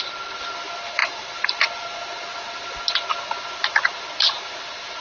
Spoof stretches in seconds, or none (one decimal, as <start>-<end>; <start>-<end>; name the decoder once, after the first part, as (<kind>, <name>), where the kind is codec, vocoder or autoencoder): none